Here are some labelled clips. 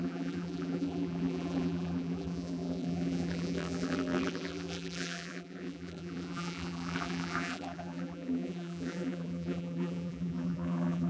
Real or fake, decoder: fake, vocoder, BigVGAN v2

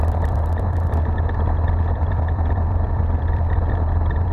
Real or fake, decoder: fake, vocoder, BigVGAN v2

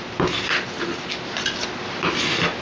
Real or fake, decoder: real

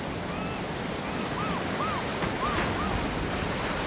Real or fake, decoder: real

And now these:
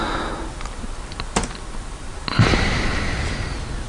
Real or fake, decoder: real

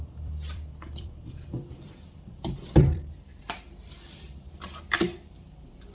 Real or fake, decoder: fake, vocoder, BigVGAN v2